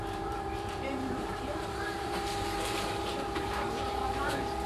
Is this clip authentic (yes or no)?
no